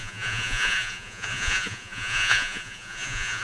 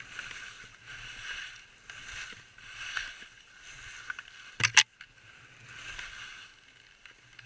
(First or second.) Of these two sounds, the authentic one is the second